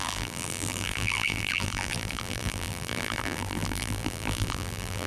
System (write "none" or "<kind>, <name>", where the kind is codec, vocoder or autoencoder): vocoder, BigVGAN v2